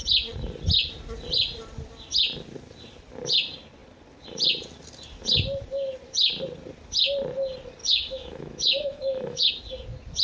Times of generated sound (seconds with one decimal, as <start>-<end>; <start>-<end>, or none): 7.8-9.5